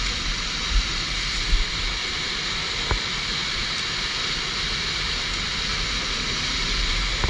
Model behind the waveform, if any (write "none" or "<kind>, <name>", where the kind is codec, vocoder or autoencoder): none